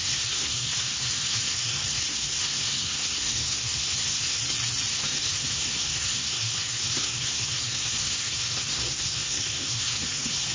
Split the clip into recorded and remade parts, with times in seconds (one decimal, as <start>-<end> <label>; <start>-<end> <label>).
0.0-4.4 remade; 4.4-4.9 recorded; 4.9-10.5 remade